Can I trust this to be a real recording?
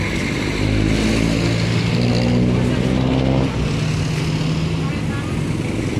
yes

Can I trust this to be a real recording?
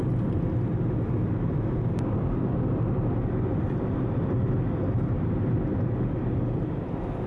yes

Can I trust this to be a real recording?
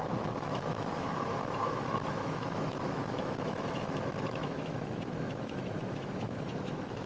no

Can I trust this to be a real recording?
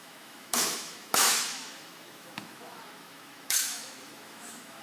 no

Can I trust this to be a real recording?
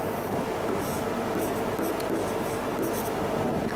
yes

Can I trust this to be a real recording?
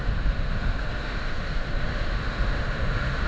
no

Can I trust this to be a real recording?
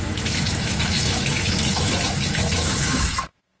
no